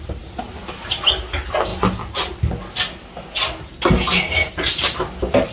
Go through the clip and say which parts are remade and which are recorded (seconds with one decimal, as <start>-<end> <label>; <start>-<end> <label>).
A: 0.0-5.5 recorded